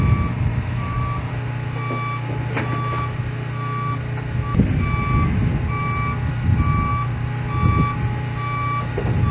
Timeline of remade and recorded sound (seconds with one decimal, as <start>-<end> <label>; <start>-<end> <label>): 0.0-0.5 recorded; 0.5-1.0 remade; 1.0-9.3 recorded